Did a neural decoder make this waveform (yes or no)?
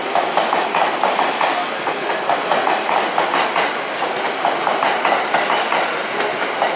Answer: no